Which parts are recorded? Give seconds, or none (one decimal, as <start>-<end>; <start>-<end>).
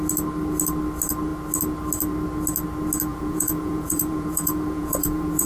0.0-3.1